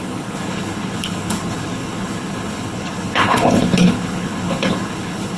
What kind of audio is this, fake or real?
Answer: fake